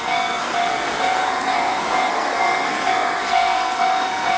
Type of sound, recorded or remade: remade